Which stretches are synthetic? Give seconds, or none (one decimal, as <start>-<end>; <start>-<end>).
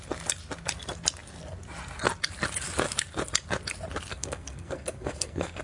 4.1-5.6